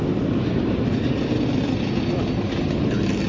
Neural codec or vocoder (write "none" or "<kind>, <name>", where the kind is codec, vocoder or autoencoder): none